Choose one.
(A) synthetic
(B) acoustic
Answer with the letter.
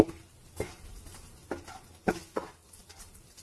B